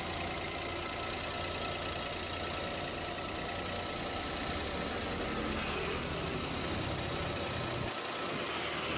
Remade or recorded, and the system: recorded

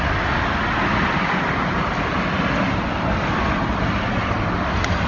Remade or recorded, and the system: recorded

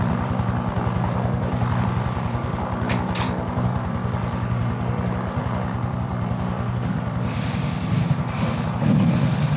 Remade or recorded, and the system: recorded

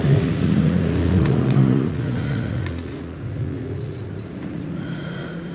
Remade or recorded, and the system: remade, vocoder, Vocos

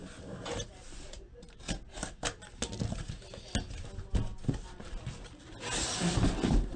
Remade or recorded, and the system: recorded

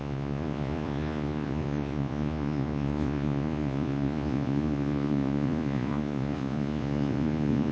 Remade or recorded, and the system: remade, vocoder, Vocos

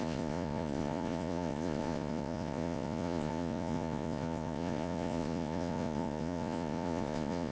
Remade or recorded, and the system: remade, vocoder, Vocos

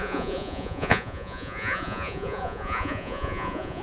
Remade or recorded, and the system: remade, vocoder, Vocos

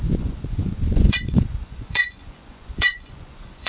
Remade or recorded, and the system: remade, vocoder, Vocos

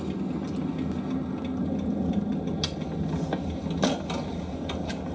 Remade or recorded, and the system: recorded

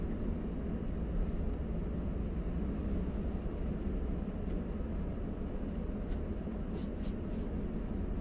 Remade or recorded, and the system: recorded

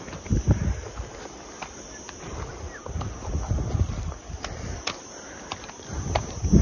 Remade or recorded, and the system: recorded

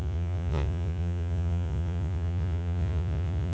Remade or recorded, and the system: remade, vocoder, Vocos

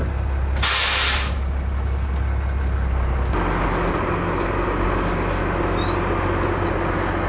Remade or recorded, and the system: recorded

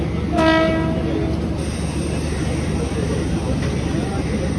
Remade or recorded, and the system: recorded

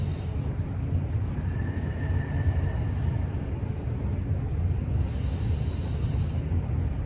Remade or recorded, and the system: recorded